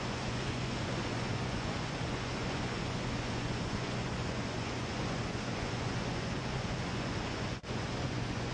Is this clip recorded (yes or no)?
no